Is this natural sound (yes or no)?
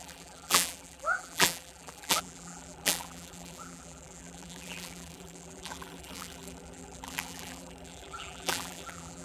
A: no